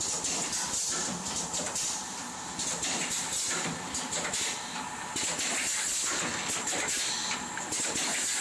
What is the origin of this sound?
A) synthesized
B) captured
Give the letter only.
B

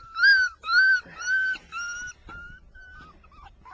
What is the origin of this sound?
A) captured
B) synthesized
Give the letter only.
A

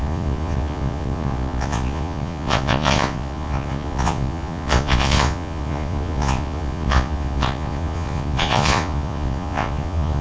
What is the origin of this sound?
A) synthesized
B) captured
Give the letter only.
A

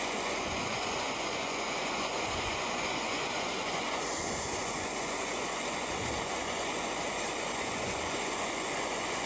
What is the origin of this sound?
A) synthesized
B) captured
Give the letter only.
A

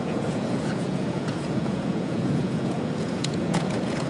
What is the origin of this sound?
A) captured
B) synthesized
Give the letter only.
B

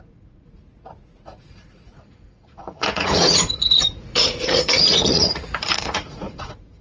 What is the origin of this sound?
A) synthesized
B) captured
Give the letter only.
A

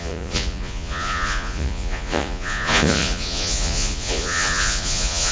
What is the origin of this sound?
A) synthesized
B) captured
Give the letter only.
A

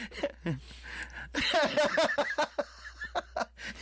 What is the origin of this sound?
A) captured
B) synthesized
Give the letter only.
A